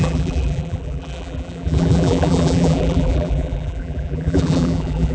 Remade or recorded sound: remade